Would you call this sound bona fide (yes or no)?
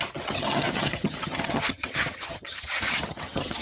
no